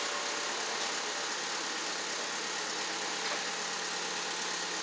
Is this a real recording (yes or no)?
yes